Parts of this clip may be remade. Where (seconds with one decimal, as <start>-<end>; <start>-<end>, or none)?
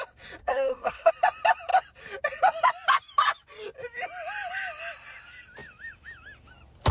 0.4-1.1